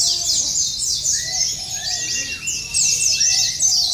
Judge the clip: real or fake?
real